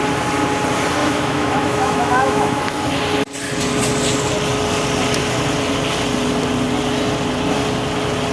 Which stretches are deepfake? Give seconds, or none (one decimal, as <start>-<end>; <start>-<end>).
1.0-2.6